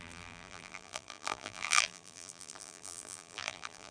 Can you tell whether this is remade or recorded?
remade